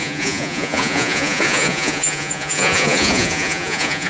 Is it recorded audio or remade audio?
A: remade